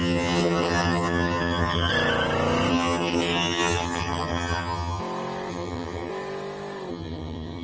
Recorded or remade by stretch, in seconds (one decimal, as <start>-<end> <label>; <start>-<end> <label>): 0.0-1.9 remade; 1.9-2.7 recorded; 2.7-5.0 remade; 5.0-5.5 recorded; 5.5-6.1 remade; 6.1-6.9 recorded; 6.9-7.6 remade

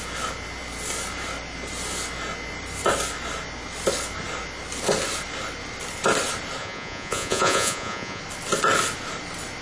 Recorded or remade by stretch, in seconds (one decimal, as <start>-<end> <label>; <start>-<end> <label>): 0.0-6.6 recorded; 6.6-8.2 remade; 8.2-9.6 recorded